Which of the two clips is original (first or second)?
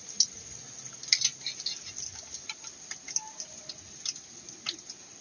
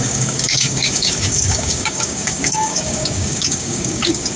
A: first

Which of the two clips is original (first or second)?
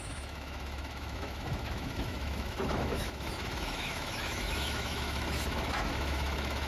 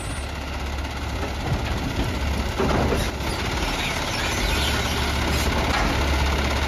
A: second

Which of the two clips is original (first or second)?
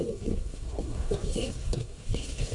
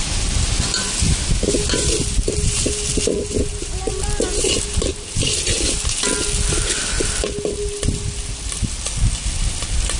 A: second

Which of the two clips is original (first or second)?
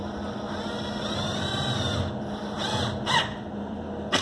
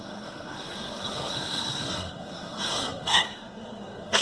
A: first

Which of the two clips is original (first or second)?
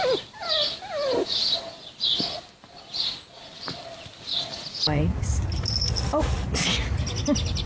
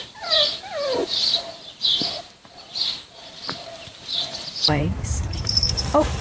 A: first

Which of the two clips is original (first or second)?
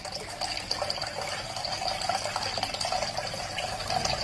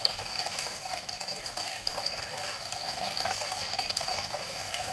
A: first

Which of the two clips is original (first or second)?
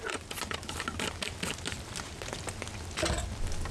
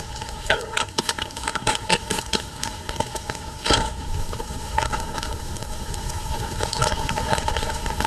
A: first